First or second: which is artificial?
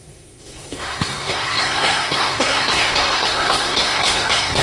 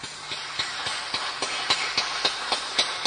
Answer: first